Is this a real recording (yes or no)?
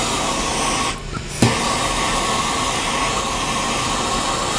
yes